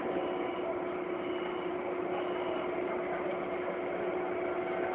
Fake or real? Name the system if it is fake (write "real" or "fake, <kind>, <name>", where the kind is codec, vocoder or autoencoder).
real